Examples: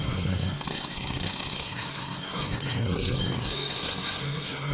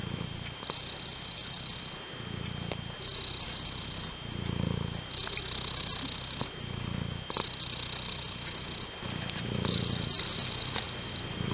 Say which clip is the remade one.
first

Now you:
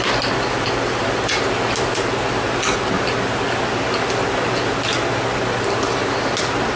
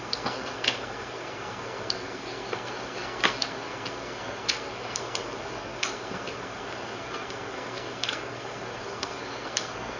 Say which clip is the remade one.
second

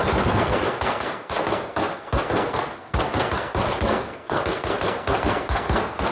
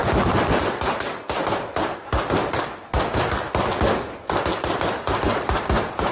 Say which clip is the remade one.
first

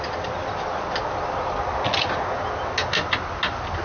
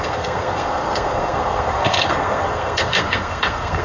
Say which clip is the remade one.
second